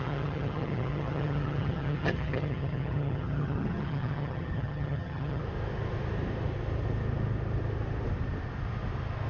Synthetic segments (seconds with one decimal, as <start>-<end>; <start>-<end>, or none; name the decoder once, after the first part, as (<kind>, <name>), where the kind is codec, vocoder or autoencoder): 0.0-5.4 (vocoder, HiFi-GAN)

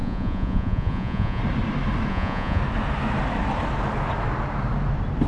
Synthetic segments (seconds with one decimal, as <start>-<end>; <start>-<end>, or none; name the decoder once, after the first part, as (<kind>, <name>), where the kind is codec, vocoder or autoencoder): 0.0-1.4 (vocoder, Vocos); 2.1-2.6

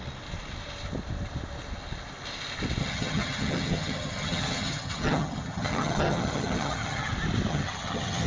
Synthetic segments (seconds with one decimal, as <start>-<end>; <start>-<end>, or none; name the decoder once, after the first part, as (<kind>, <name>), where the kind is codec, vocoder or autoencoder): 2.8-7.1 (vocoder, HiFi-GAN); 7.5-8.3